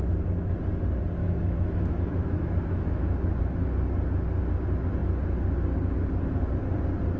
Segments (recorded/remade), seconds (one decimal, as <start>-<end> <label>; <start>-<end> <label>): 0.0-1.2 recorded; 1.2-3.4 remade; 3.4-7.2 recorded